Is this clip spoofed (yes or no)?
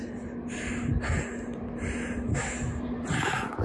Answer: no